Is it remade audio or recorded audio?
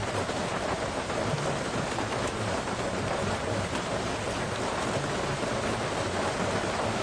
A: recorded